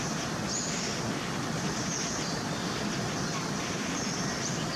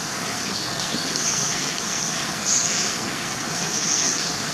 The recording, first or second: first